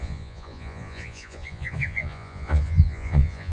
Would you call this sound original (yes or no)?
no